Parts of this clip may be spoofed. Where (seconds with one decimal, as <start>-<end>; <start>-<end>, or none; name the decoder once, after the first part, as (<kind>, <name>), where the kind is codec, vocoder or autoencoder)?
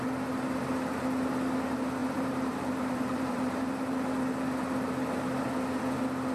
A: 2.0-4.0 (vocoder, BigVGAN v2)